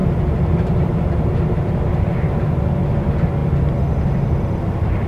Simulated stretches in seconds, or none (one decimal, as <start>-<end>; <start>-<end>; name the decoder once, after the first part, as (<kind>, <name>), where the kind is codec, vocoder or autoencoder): 0.0-2.6 (vocoder, BigVGAN v2)